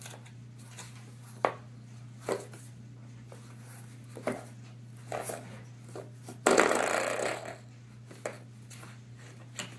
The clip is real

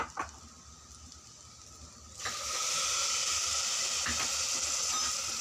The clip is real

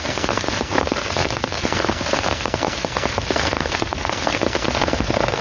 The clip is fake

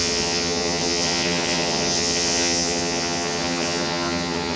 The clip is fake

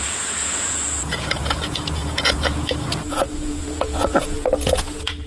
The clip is fake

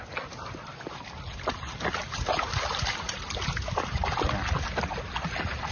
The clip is real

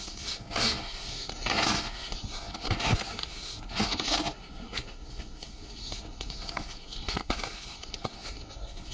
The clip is fake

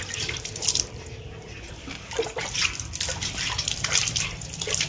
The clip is fake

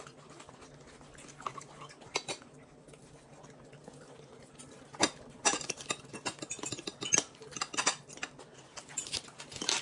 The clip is real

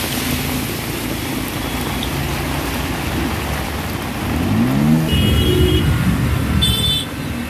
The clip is real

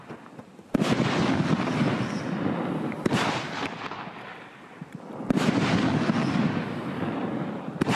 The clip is real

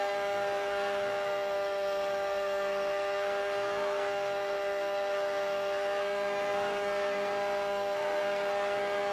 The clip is fake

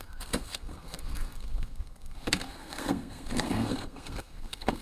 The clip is fake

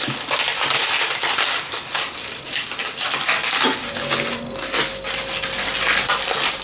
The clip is real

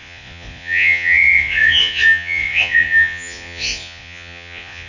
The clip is fake